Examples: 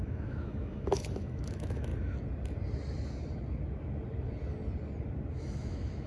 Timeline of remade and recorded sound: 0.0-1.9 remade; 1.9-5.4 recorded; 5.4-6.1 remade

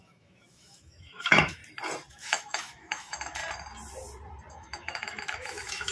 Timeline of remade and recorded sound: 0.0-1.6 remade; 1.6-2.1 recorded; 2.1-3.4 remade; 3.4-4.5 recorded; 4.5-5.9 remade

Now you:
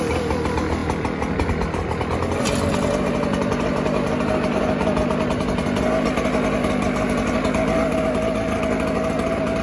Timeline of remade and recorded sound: 0.0-9.6 recorded

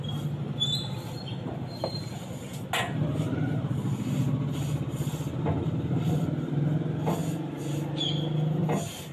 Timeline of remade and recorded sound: 0.0-9.1 recorded